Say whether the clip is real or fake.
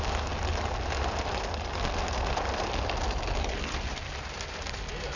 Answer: real